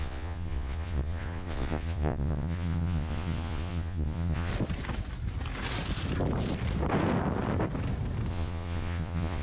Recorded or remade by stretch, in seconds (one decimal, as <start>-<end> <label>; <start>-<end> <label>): 0.0-4.5 remade; 4.5-8.3 recorded; 8.3-9.4 remade